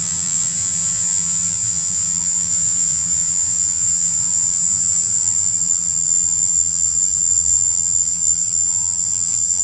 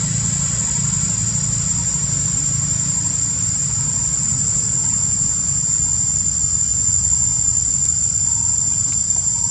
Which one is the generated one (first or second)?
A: first